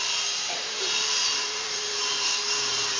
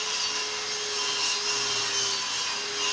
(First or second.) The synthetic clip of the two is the first